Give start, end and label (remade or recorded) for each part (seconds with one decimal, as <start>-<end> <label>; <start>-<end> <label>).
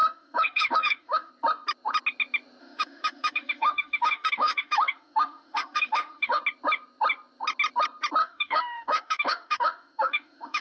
0.0-1.3 remade; 1.3-2.6 recorded; 2.6-6.4 remade; 6.4-8.2 recorded; 8.2-10.6 remade